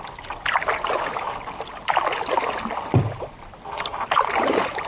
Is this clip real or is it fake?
real